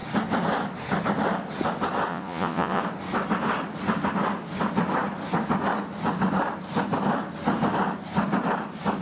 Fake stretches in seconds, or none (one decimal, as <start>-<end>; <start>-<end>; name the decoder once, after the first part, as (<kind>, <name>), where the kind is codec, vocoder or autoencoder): 2.1-2.8 (vocoder, Vocos)